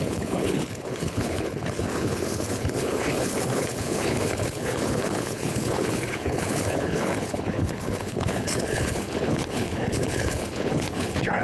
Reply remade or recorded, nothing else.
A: remade